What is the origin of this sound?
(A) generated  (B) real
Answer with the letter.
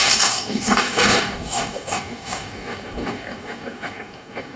A